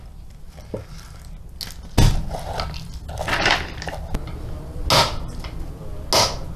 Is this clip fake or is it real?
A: real